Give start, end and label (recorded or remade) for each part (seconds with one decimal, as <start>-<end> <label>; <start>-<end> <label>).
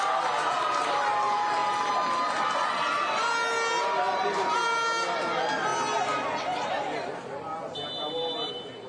0.0-8.9 recorded